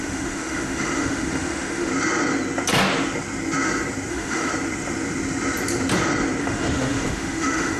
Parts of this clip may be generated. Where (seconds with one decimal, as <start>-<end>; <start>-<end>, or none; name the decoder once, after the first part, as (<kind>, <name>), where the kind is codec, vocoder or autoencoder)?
0.0-1.9 (autoencoder, DAC-VAE); 4.1-4.5; 6.4-7.8